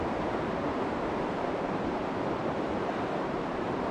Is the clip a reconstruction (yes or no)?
yes